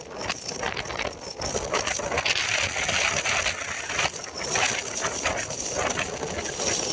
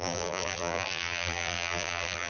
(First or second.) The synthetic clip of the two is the second